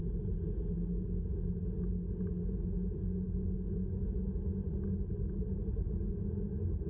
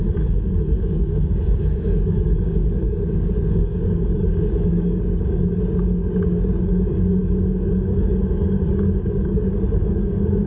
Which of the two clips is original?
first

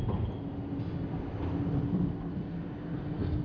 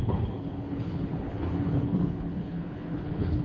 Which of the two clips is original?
first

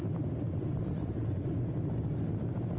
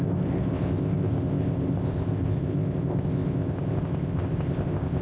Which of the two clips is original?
first